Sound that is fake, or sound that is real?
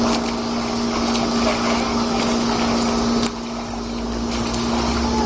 real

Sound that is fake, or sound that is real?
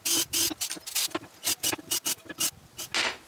real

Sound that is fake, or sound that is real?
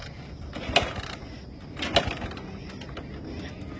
real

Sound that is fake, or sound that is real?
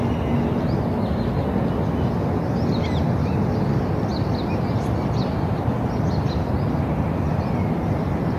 real